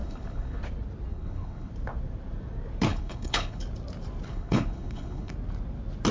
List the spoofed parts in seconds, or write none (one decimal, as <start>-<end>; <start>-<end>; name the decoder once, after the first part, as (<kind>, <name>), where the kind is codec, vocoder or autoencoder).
0.0-0.6 (codec, HILCodec); 1.1-1.7; 2.9-3.6; 4.3-5.3